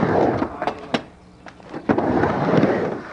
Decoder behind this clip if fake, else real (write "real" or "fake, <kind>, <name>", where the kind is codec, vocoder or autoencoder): real